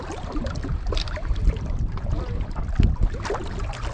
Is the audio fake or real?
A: fake